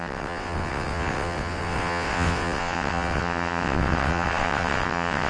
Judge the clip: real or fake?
fake